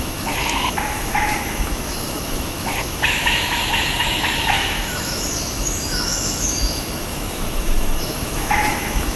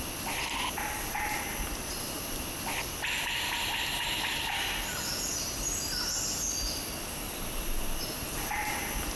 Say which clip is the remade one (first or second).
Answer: first